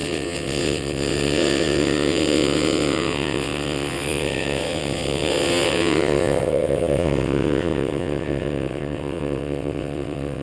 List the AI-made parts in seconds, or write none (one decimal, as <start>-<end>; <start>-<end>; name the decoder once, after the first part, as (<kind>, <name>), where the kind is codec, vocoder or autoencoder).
0.0-10.4 (vocoder, WaveNeXt)